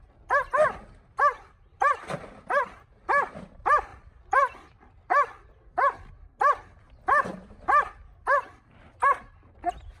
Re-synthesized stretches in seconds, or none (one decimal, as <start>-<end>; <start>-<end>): none